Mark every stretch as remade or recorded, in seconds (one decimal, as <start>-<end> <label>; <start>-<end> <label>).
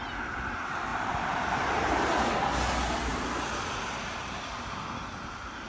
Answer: 0.0-0.9 recorded; 0.9-2.1 remade; 2.1-5.7 recorded